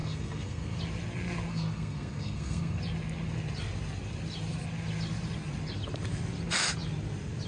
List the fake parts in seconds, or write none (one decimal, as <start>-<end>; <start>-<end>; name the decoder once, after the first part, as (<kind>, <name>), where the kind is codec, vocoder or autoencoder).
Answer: 0.0-0.8 (codec, SNAC); 1.5-2.8

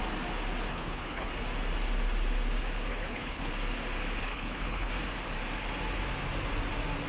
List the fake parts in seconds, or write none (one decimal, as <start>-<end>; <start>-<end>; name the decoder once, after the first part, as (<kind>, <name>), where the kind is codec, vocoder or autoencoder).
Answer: 0.7-1.3 (codec, HILCodec); 2.9-3.5; 4.2-4.9

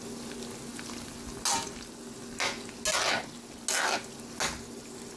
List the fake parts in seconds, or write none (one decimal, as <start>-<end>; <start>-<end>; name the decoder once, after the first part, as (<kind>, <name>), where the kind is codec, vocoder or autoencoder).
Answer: none

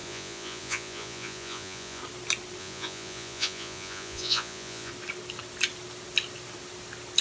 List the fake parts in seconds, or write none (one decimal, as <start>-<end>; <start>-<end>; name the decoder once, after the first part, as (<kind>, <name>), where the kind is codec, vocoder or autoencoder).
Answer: 0.0-2.0 (vocoder, Vocos); 2.6-4.9

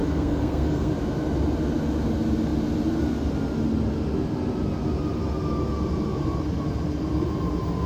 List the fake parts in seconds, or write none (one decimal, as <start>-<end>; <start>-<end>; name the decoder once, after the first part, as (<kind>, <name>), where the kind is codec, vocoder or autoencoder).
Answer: 0.0-0.9 (codec, SNAC)